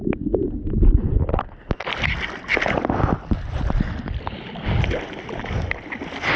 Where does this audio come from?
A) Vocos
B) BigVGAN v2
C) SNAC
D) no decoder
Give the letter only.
D